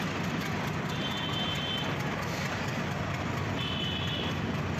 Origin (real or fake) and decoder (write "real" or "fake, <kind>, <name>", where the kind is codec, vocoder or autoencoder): real